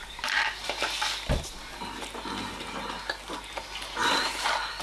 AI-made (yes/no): no